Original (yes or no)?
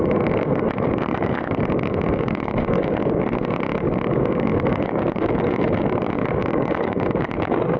no